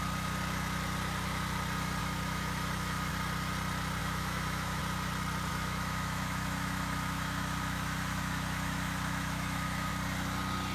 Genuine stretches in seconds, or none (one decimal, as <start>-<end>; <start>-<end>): 0.0-2.0; 3.1-4.0; 4.8-5.5; 9.9-10.7